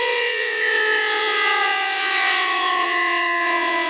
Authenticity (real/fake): fake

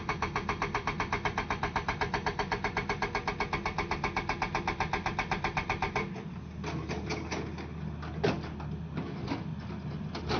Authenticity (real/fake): real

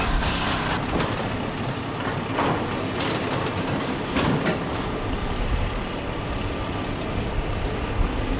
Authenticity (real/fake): fake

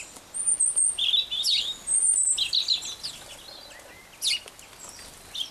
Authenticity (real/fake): real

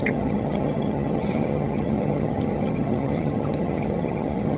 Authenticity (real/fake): fake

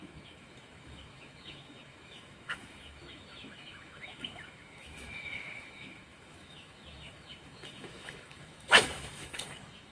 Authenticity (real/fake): fake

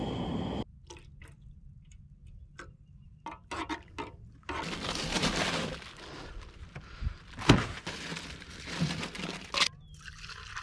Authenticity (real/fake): real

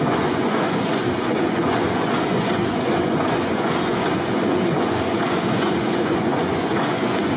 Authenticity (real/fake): fake